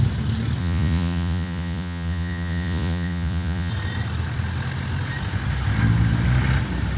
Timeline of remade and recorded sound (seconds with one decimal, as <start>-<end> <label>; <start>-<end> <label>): 0.0-0.6 recorded; 0.6-3.7 remade; 3.7-7.0 recorded